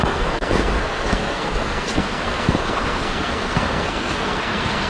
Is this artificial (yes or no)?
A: yes